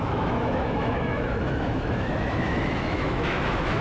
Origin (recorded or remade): remade